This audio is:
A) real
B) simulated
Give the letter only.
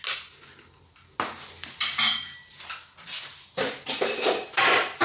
A